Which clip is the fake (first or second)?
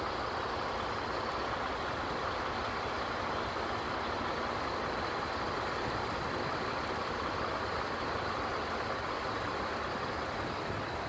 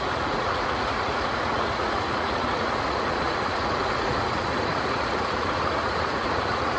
second